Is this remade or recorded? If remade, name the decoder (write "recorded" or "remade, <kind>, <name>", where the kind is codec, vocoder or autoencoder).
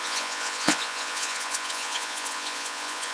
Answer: remade, vocoder, Vocos